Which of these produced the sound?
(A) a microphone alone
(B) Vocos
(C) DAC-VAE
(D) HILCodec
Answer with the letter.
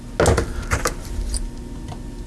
A